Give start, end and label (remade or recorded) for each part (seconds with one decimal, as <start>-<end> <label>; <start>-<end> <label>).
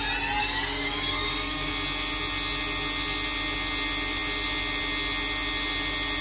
0.0-0.4 recorded; 0.4-1.7 remade; 1.7-6.2 recorded